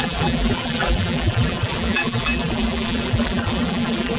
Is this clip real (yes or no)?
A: no